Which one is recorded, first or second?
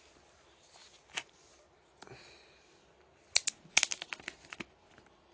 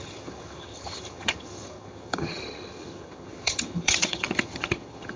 first